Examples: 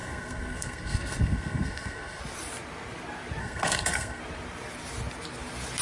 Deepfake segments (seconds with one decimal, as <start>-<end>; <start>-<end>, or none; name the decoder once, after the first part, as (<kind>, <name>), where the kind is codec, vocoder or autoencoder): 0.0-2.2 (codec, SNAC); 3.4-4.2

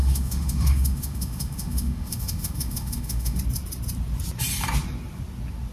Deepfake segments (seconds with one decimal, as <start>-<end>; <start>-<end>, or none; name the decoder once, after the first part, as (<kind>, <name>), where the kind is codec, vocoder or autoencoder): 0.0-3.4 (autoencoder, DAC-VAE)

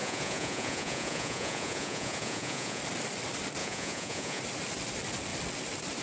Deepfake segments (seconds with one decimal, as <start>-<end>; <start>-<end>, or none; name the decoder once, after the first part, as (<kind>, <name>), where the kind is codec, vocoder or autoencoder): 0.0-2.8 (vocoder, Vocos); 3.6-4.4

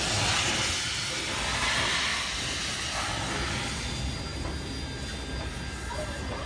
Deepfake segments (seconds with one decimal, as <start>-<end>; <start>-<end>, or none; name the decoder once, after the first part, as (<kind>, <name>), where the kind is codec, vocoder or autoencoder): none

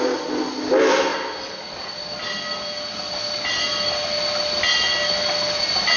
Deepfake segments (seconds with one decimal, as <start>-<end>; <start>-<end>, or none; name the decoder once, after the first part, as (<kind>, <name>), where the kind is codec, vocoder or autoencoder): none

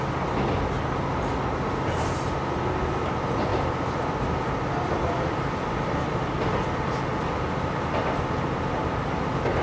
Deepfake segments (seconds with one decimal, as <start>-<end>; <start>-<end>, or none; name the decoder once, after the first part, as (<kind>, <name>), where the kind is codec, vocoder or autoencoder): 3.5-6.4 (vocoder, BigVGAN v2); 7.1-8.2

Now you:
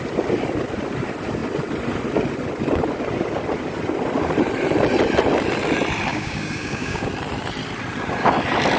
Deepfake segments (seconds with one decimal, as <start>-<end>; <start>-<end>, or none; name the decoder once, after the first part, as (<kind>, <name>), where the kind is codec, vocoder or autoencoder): 6.1-7.1 (codec, DAC)

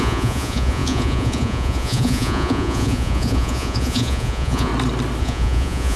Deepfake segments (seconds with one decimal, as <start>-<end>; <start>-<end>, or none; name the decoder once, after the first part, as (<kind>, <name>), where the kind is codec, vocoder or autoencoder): 0.0-4.7 (vocoder, Vocos); 5.2-6.0